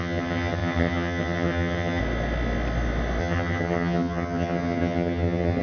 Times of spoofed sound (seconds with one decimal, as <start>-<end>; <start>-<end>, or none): 0.0-2.0; 3.2-5.6